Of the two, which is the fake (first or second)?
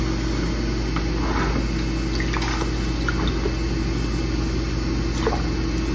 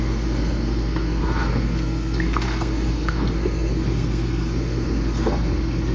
second